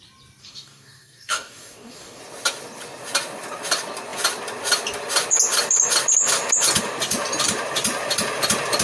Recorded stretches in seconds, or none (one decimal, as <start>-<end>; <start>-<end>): 0.0-0.4; 2.2-8.8